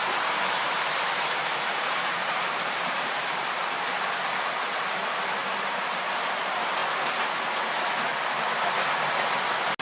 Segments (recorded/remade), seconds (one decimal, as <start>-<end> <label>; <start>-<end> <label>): 0.0-3.6 remade; 3.6-5.4 recorded; 5.4-6.0 remade; 6.0-9.8 recorded

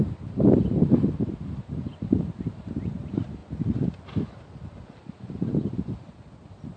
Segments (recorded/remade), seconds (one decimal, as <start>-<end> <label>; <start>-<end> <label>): 0.0-3.4 remade; 3.4-5.3 recorded; 5.3-6.8 remade

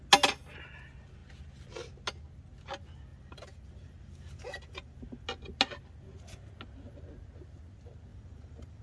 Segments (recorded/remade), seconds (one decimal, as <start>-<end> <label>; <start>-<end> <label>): 0.0-3.1 recorded; 3.1-5.0 remade; 5.0-8.1 recorded; 8.1-8.8 remade

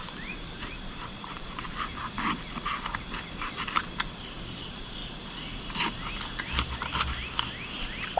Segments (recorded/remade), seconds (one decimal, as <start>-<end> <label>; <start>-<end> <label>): 0.0-1.9 remade; 1.9-3.8 recorded; 3.8-5.0 remade; 5.0-8.2 recorded

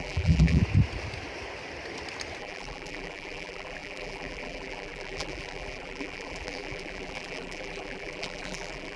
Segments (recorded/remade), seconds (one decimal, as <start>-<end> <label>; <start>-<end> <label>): 0.0-0.6 remade; 0.6-2.4 recorded; 2.4-9.0 remade

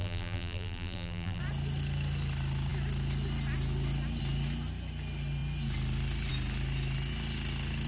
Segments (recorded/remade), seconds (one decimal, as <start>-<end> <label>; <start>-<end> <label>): 0.0-1.4 remade; 1.4-7.9 recorded

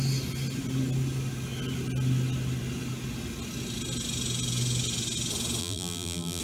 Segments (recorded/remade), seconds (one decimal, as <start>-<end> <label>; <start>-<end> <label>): 0.0-5.6 recorded; 5.6-6.4 remade